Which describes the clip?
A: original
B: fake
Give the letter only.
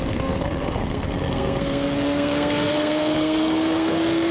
B